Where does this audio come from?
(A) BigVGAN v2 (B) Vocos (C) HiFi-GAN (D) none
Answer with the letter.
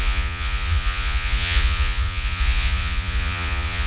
B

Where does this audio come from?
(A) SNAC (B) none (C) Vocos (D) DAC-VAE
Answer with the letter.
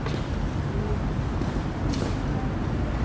B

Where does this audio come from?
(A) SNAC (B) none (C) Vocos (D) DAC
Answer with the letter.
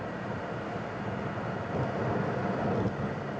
B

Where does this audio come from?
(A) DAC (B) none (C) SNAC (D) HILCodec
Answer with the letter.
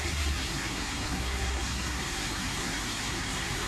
C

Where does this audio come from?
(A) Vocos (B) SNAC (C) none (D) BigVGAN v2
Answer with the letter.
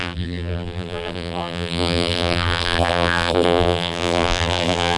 D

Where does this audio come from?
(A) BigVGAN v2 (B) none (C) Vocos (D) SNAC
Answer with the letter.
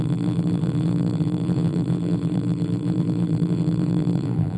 A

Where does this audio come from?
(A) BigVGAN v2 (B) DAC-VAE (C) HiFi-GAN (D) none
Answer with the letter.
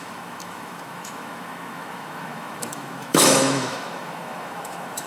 B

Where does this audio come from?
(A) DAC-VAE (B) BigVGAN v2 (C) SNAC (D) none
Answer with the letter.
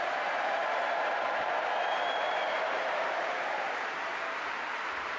B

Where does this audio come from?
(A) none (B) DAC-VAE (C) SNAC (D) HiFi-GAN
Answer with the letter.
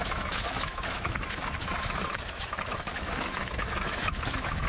B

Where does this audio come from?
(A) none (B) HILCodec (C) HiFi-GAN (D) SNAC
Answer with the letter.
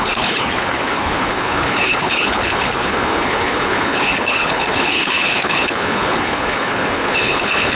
B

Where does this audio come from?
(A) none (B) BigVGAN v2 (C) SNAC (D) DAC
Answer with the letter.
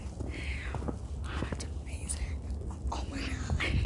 A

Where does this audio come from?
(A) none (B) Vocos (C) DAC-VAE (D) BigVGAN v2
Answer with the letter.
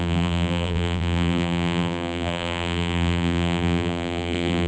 D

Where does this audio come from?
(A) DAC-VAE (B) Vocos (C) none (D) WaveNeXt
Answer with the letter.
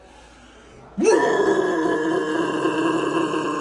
C